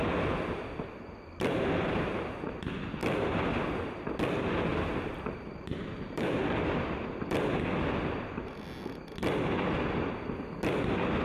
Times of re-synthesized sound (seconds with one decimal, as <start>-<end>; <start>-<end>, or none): 4.7-6.4